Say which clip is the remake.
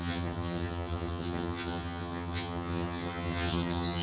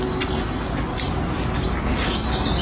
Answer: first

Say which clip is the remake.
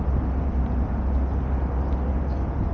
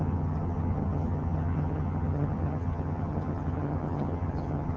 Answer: second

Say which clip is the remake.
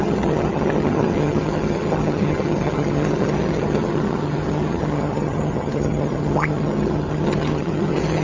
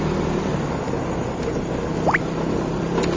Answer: first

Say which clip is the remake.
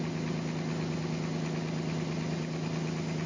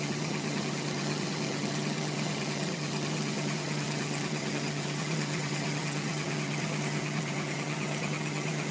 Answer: second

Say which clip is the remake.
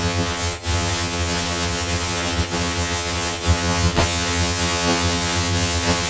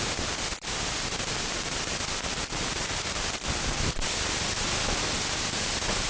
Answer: first